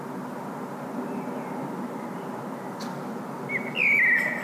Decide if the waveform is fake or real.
real